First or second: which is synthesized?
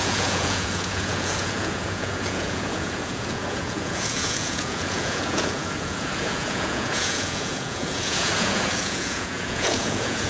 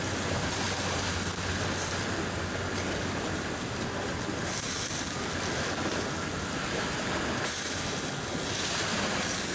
first